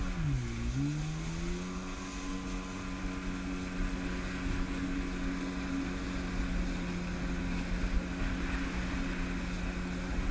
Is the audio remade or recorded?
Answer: recorded